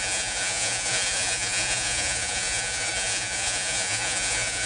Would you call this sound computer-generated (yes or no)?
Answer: yes